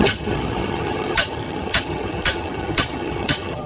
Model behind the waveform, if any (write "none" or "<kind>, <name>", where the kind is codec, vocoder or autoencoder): vocoder, HiFi-GAN